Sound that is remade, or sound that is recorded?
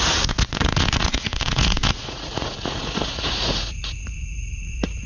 remade